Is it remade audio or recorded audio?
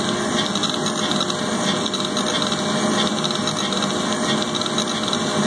recorded